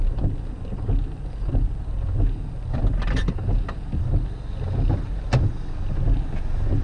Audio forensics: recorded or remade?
recorded